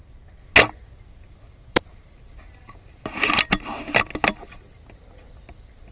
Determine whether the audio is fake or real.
real